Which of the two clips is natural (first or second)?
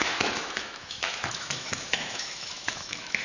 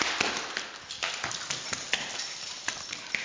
second